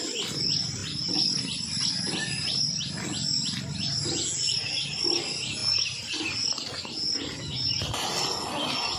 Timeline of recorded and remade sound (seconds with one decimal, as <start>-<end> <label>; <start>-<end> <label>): 0.0-9.0 recorded